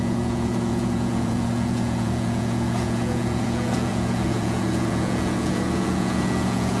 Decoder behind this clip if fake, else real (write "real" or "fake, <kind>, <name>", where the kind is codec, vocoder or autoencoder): fake, vocoder, Vocos